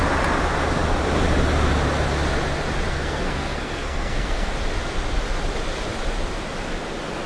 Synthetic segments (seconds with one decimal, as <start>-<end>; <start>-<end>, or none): 2.9-4.5